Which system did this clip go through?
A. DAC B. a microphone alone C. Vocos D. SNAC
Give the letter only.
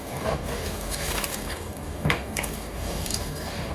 A